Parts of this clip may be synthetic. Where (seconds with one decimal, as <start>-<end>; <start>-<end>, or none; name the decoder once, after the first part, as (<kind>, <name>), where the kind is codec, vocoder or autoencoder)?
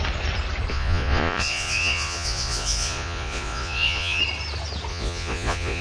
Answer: 0.7-4.2 (vocoder, Vocos); 4.9-5.8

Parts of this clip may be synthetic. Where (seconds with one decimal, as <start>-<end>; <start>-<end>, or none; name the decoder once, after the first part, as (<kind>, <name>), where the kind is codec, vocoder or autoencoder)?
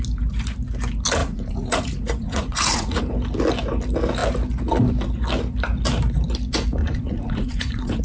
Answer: 1.2-3.0 (vocoder, Vocos); 6.8-8.0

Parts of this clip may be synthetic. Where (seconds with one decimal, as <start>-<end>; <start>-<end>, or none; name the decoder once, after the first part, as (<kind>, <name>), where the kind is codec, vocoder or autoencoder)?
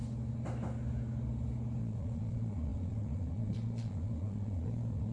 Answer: 1.8-5.1 (vocoder, Vocos)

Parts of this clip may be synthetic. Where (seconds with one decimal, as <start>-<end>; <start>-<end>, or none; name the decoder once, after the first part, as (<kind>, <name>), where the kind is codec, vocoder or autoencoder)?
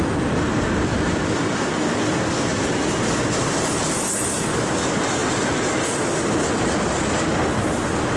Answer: none